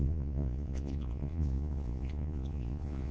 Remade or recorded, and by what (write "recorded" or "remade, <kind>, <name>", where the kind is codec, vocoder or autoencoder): remade, vocoder, Vocos